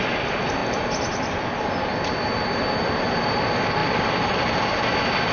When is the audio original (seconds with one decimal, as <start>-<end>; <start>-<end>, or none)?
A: 0.0-5.3